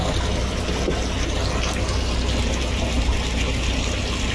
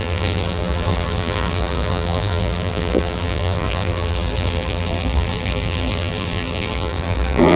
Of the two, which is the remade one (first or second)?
second